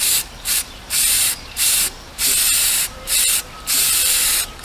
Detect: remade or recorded remade